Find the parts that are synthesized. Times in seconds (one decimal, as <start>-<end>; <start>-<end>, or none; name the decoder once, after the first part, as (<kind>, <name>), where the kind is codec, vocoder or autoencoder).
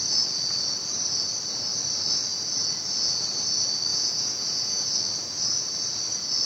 3.9-4.9 (vocoder, Vocos)